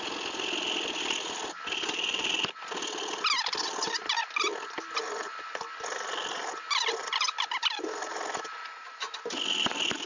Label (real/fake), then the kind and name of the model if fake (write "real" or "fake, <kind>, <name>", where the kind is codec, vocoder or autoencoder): real